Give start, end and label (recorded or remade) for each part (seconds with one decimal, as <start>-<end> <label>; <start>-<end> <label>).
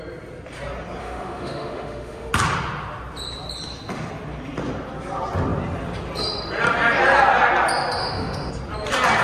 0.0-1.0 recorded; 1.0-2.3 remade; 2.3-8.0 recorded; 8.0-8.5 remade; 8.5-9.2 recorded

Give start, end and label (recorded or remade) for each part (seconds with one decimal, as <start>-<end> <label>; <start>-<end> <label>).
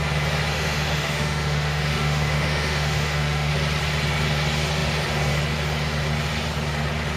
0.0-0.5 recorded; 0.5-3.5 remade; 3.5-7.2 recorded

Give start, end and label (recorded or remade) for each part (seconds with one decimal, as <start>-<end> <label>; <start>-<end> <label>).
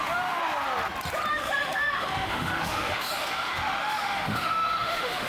0.0-0.4 remade; 0.4-1.3 recorded; 1.3-5.3 remade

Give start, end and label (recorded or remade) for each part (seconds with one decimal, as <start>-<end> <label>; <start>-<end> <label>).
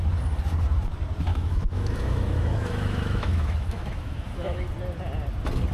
0.0-1.3 recorded; 1.3-4.7 remade; 4.7-5.7 recorded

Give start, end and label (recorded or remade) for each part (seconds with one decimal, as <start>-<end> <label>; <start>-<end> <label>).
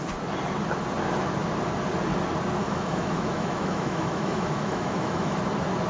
0.0-2.6 recorded; 2.6-5.4 remade; 5.4-5.9 recorded